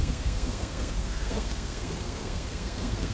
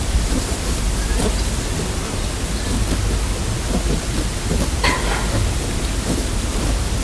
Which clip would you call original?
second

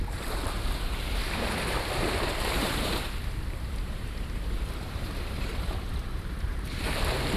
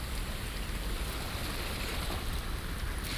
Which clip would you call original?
second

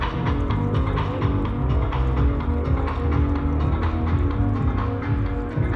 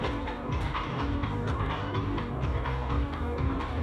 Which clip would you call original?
first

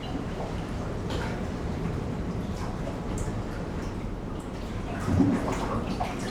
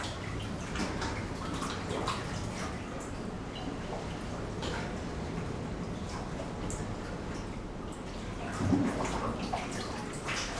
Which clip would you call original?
second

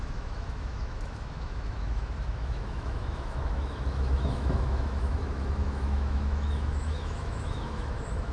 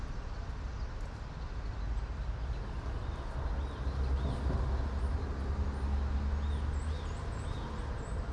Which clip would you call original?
second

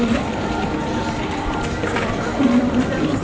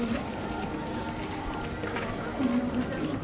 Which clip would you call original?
second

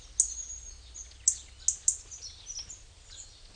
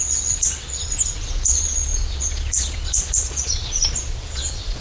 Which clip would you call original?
first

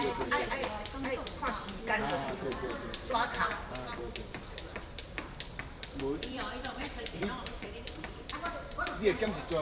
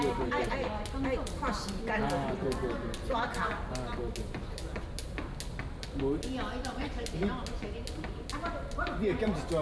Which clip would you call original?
second